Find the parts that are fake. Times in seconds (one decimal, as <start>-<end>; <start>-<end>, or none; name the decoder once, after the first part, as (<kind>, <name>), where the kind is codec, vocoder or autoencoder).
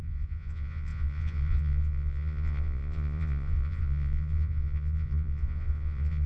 0.0-6.3 (vocoder, Vocos)